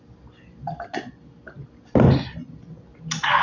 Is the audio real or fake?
real